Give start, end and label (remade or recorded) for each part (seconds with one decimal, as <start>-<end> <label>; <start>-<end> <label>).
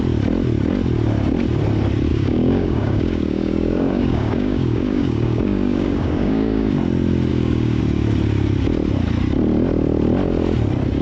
0.0-2.1 recorded; 2.1-6.7 remade; 6.7-7.3 recorded; 7.3-7.8 remade; 7.8-11.0 recorded